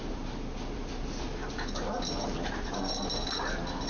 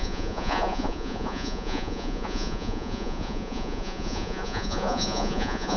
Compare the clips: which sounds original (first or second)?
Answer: first